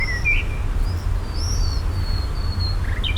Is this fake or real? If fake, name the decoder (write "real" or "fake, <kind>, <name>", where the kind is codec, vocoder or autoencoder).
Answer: real